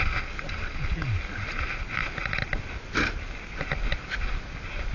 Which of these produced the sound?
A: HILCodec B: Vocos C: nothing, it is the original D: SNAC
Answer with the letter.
C